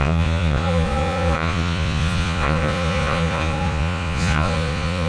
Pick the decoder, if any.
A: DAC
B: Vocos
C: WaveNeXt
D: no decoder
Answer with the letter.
B